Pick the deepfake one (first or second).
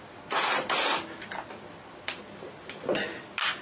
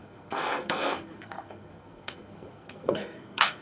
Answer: second